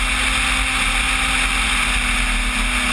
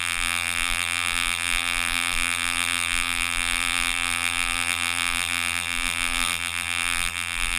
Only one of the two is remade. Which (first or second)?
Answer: second